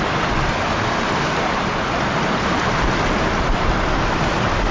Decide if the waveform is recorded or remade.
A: recorded